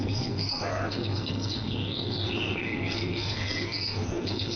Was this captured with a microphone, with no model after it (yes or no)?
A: no